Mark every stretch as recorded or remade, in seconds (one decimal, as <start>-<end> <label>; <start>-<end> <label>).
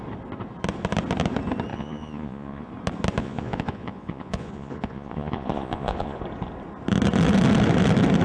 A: 0.0-1.7 recorded; 1.7-2.7 remade; 2.7-3.2 recorded; 3.2-6.2 remade; 6.2-8.2 recorded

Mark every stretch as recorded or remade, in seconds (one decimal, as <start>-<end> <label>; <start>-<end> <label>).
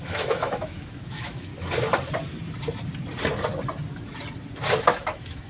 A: 0.0-1.5 remade; 1.5-4.8 recorded; 4.8-5.5 remade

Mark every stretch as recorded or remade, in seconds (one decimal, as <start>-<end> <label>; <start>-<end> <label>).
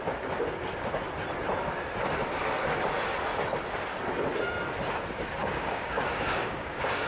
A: 0.0-5.4 recorded; 5.4-7.1 remade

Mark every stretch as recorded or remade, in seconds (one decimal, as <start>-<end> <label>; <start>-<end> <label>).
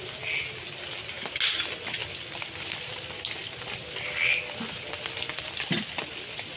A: 0.0-6.6 recorded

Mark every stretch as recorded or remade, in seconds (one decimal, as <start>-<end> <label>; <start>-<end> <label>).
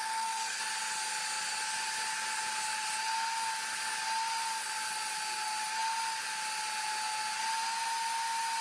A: 0.0-0.6 remade; 0.6-8.6 recorded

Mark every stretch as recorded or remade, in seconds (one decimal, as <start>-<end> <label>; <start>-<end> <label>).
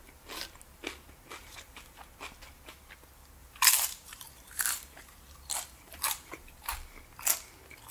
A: 0.0-1.4 recorded; 1.4-2.0 remade; 2.0-3.4 recorded; 3.4-6.7 remade; 6.7-7.9 recorded